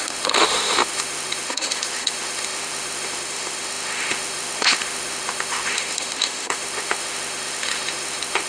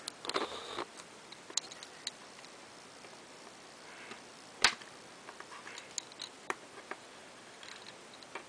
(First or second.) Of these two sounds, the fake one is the first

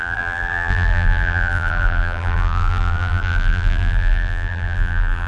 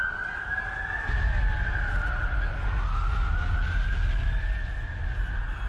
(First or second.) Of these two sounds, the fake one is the first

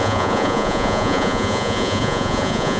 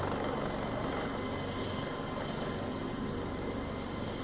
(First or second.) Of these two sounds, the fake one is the first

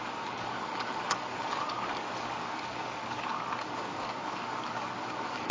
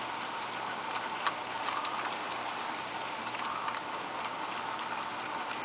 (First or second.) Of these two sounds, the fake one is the first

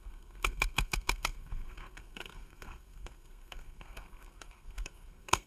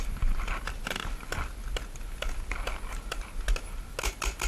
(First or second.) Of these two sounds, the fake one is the first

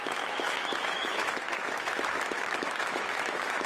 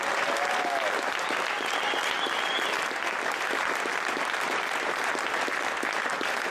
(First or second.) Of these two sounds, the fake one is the first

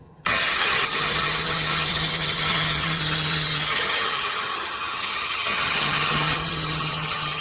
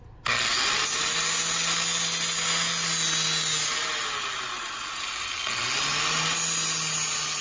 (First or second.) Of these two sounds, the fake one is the first